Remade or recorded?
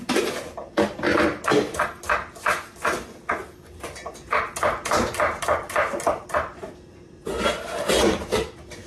recorded